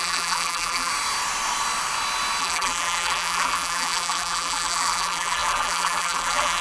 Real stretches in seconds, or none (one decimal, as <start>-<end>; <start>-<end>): 0.9-2.4